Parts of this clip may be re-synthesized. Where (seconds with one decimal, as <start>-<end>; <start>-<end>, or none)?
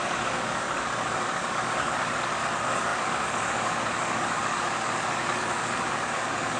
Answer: 0.0-6.6